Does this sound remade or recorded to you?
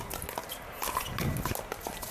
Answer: recorded